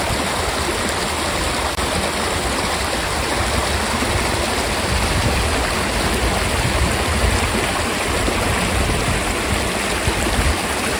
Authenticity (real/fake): real